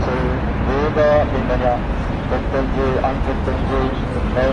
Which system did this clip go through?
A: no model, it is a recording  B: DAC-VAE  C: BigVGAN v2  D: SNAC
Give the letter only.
A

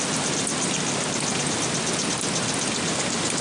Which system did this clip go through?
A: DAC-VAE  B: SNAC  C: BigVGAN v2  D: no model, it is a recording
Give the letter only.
D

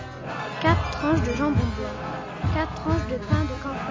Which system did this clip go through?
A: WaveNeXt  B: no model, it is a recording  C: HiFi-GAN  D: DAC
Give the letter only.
B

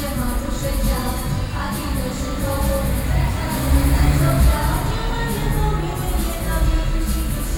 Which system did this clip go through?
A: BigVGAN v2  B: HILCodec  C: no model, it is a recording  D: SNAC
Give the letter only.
C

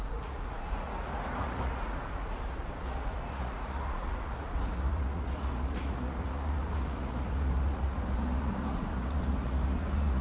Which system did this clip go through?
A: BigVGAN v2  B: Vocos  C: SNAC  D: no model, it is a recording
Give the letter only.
B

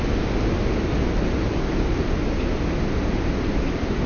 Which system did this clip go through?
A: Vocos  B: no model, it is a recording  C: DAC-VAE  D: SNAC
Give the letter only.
B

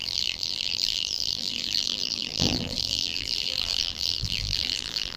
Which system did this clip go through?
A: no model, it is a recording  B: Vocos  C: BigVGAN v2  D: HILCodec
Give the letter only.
C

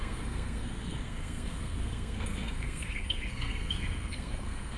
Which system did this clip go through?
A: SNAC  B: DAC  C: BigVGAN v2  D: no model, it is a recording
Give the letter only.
A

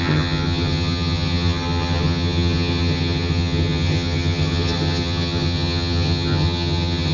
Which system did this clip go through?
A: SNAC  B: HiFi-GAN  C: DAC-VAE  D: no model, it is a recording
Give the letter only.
B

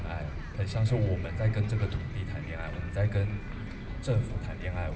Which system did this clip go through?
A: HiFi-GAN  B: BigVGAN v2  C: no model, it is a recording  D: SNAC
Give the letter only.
C